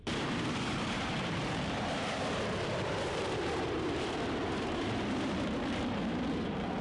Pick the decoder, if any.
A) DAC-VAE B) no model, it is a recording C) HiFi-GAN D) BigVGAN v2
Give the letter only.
D